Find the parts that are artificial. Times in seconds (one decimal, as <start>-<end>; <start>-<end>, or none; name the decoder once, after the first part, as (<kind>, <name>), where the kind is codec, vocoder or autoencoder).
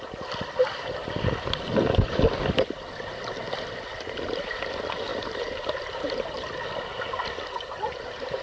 5.1-6.6 (vocoder, BigVGAN v2)